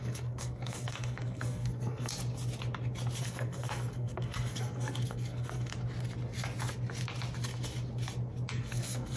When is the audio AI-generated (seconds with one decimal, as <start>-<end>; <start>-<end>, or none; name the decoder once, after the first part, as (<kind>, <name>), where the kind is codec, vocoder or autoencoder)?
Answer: 0.0-2.1 (codec, SNAC); 3.2-5.7; 8.5-9.2